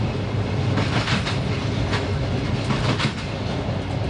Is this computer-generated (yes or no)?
no